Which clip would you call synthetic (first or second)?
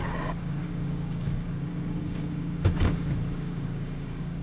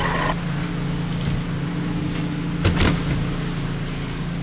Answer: first